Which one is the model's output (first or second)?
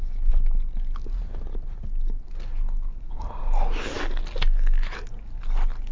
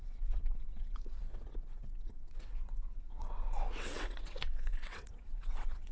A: second